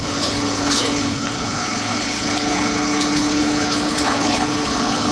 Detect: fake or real fake